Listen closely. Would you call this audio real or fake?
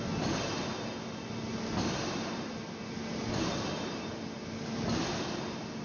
real